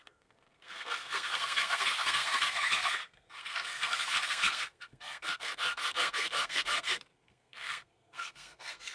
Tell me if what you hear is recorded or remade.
remade